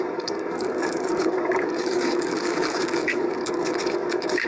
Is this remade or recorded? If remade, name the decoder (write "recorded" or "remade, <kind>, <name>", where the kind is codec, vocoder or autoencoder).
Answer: remade, codec, DAC